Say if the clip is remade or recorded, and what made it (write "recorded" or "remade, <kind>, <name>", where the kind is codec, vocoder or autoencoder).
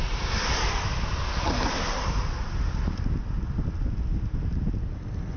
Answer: recorded